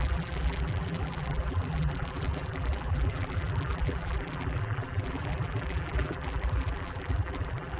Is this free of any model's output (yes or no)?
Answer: no